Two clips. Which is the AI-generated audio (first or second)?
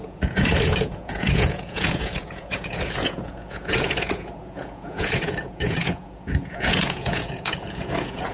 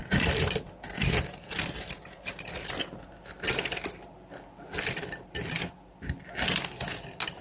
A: first